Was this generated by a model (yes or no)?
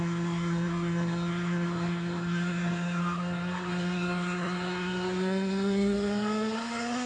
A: yes